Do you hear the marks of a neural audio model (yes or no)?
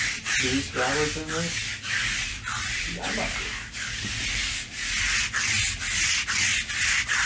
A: no